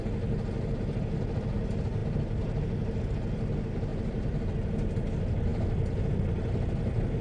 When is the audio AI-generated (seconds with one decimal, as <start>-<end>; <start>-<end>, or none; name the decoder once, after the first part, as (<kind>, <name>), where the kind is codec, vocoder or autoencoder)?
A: 3.9-4.9 (vocoder, BigVGAN v2)